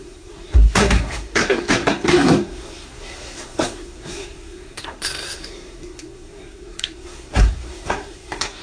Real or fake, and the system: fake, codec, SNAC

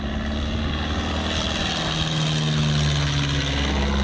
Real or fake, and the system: real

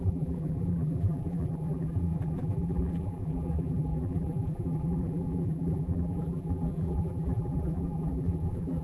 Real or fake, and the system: fake, vocoder, BigVGAN v2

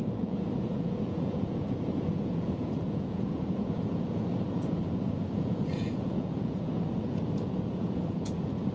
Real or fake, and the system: fake, vocoder, Vocos